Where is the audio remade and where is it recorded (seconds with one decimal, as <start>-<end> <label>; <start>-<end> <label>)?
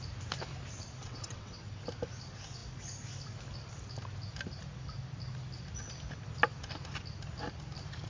0.0-1.0 recorded; 1.0-1.6 remade; 1.6-8.1 recorded